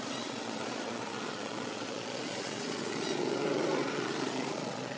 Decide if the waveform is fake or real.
fake